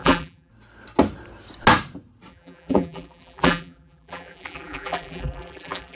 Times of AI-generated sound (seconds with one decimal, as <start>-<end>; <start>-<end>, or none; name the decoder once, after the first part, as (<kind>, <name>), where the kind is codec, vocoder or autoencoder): 0.0-0.5 (vocoder, BigVGAN v2); 2.3-6.0